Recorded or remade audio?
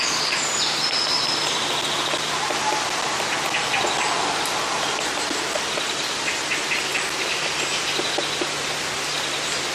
recorded